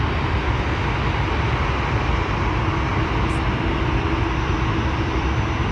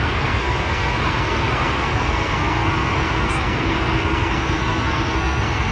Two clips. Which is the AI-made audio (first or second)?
second